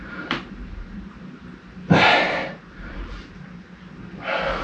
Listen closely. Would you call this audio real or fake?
fake